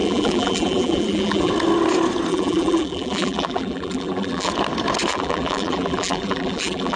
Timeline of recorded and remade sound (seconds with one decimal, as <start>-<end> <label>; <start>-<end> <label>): 0.0-1.5 remade; 1.5-2.3 recorded; 2.3-4.5 remade; 4.5-5.1 recorded; 5.1-7.0 remade